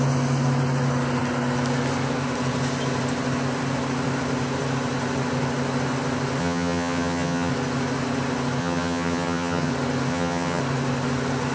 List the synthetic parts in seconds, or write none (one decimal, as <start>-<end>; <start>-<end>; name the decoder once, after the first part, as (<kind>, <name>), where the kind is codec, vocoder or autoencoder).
6.4-7.5 (vocoder, HiFi-GAN); 8.6-9.7; 10.1-10.6